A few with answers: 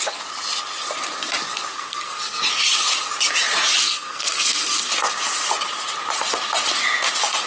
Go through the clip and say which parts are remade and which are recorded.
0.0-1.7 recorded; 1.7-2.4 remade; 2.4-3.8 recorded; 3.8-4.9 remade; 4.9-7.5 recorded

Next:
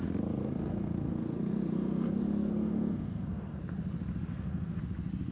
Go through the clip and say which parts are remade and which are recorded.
0.0-0.4 recorded; 0.4-3.6 remade; 3.6-4.3 recorded; 4.3-4.8 remade; 4.8-5.3 recorded

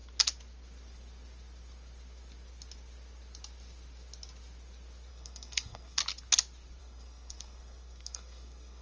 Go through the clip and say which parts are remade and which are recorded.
0.0-5.1 recorded; 5.1-6.0 remade; 6.0-6.8 recorded; 6.8-8.8 remade